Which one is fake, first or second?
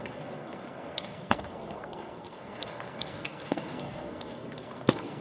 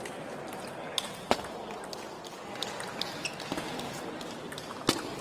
first